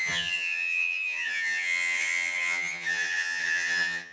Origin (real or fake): fake